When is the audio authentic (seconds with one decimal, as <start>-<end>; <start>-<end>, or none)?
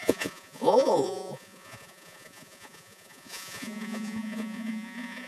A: none